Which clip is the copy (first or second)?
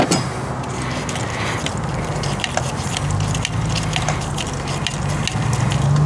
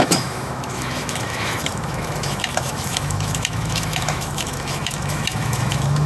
second